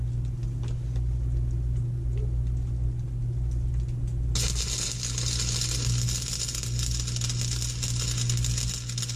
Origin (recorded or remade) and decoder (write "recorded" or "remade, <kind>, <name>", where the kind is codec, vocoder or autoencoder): recorded